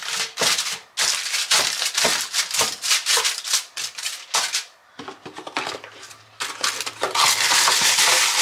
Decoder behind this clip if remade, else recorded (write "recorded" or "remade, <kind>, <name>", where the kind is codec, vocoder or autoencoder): recorded